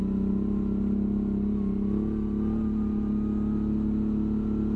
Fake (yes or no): no